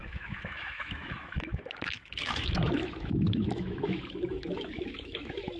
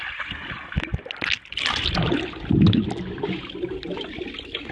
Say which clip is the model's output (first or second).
first